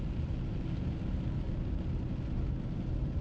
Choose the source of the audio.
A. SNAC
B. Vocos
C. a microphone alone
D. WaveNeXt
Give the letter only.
C